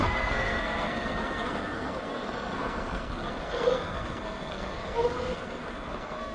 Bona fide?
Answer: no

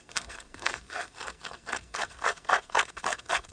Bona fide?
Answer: no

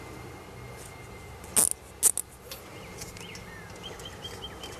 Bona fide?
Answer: yes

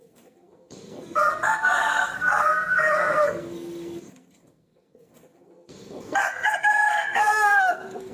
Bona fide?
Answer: no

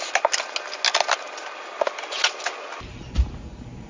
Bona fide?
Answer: yes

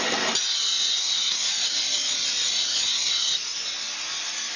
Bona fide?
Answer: yes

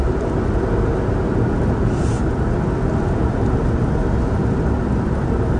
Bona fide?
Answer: yes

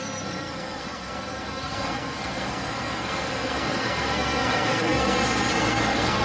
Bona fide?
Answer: no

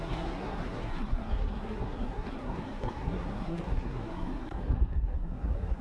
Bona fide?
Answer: no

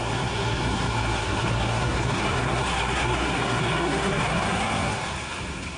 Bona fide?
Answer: no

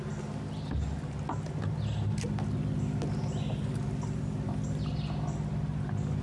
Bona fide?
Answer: yes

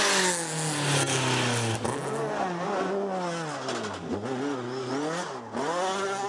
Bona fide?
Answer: yes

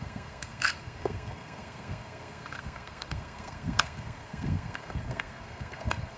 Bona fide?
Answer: no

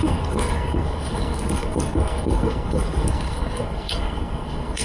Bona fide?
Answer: no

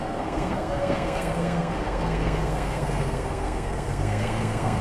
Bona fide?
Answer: no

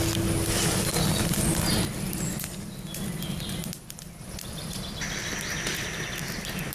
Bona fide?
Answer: yes